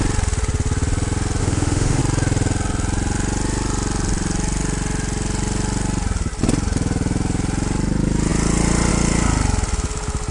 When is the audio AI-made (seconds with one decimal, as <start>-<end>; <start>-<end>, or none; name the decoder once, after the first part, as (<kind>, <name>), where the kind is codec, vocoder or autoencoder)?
1.4-2.0 (autoencoder, DAC-VAE)